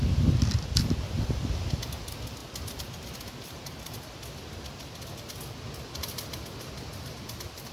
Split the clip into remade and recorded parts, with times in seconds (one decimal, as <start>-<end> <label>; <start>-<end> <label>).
0.0-7.7 recorded